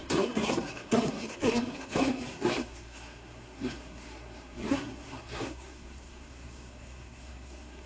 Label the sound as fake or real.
fake